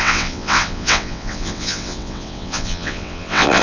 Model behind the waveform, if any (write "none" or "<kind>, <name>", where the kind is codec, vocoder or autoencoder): vocoder, WaveNeXt